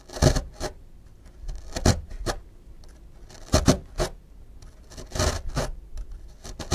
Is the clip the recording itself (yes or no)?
yes